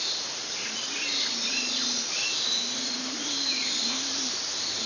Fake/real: fake